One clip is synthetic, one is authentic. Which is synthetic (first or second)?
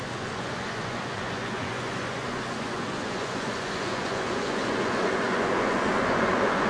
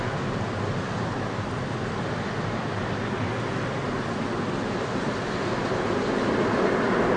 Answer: first